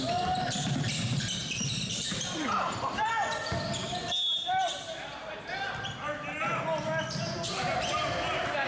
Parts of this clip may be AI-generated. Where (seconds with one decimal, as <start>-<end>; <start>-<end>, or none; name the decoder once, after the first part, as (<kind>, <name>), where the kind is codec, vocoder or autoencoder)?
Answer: 1.4-3.1 (vocoder, BigVGAN v2)